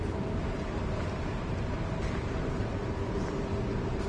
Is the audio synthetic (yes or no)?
no